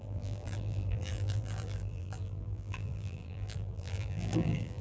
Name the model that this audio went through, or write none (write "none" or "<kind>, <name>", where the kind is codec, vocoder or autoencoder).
vocoder, BigVGAN v2